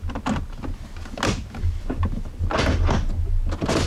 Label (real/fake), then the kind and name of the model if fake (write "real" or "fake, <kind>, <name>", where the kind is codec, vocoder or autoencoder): real